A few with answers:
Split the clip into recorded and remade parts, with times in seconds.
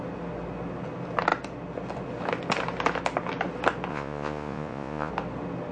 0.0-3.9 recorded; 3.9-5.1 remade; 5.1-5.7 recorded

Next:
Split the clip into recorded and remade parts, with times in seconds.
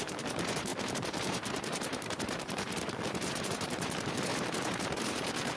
0.0-5.6 remade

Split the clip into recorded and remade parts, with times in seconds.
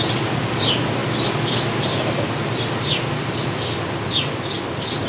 0.0-5.1 recorded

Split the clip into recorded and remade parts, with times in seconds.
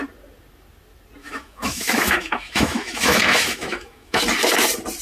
0.0-1.2 recorded; 1.2-4.2 remade; 4.2-5.0 recorded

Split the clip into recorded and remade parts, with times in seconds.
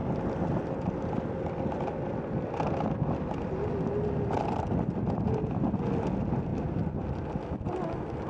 0.0-8.3 recorded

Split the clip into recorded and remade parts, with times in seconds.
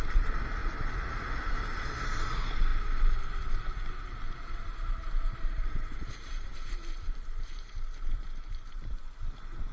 0.0-5.0 recorded; 5.0-9.0 remade; 9.0-9.7 recorded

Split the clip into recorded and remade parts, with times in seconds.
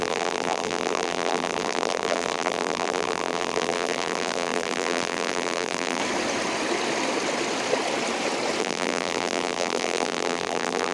0.0-6.0 remade; 6.0-8.6 recorded; 8.6-10.9 remade